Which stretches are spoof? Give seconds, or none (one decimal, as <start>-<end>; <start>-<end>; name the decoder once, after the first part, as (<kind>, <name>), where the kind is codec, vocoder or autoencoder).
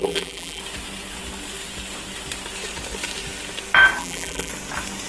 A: 0.0-0.6 (vocoder, BigVGAN v2); 4.0-4.5